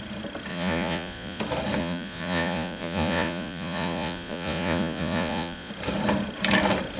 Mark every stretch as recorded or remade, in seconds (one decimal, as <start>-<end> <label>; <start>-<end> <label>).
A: 0.0-0.5 recorded; 0.5-1.4 remade; 1.4-1.8 recorded; 1.8-5.7 remade; 5.7-7.0 recorded